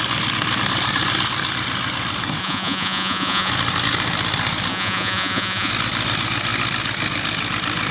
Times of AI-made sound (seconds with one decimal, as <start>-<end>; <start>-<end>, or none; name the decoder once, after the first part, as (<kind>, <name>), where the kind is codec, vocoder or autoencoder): 2.4-3.5 (vocoder, Vocos); 4.7-5.7

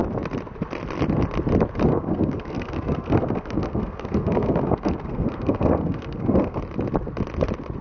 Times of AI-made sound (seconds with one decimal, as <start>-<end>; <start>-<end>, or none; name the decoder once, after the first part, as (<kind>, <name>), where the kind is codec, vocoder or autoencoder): 1.9-6.6 (codec, SNAC)

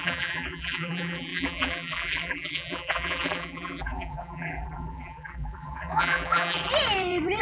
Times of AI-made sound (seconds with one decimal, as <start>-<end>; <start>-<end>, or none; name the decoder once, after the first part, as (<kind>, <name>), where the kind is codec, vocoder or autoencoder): 0.0-6.7 (vocoder, BigVGAN v2)

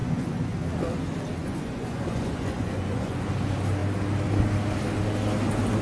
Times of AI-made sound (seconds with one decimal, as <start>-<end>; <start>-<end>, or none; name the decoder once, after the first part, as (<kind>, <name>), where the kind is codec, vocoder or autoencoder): 0.0-0.6 (vocoder, Vocos); 1.4-3.3

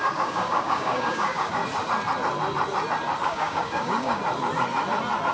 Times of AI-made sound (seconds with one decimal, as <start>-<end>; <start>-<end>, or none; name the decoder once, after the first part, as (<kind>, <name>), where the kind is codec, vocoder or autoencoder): 0.0-1.6 (codec, DAC); 3.2-4.2

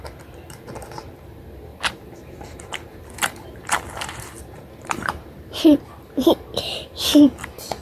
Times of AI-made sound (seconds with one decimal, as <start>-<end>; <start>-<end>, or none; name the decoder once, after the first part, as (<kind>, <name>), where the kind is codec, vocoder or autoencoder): 1.7-5.8 (vocoder, BigVGAN v2)

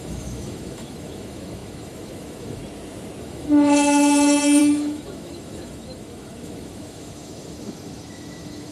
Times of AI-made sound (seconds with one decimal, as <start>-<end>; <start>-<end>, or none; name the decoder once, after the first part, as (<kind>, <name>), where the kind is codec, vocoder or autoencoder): 0.0-2.6 (autoencoder, DAC-VAE); 3.2-8.7

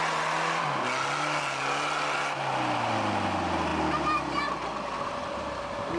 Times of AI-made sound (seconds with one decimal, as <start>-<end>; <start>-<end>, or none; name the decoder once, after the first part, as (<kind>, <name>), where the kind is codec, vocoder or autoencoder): none